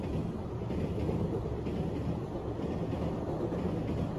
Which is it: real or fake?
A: real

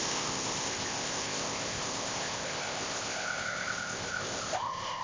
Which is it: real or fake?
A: fake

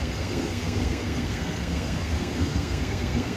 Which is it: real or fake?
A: fake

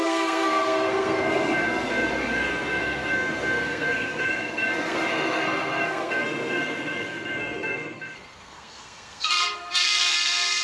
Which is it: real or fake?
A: fake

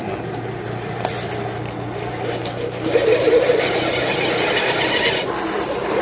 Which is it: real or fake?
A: real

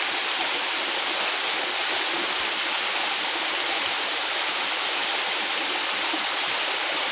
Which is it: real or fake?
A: real